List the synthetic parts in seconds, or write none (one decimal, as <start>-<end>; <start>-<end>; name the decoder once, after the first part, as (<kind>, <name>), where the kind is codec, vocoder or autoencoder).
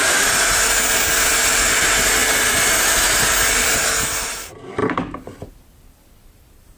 none